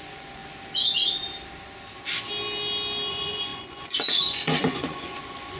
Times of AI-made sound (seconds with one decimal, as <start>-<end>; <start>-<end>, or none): 0.0-0.4; 3.1-5.6